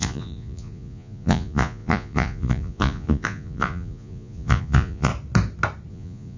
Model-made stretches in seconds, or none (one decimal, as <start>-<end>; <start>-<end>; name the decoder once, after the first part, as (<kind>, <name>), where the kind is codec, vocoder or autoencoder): 0.0-5.1 (vocoder, Vocos); 5.9-6.4